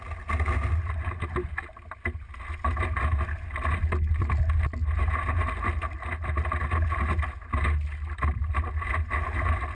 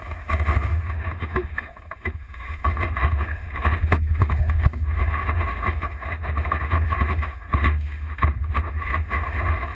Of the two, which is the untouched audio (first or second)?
first